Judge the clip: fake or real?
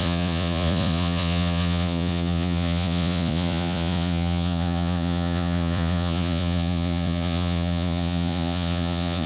fake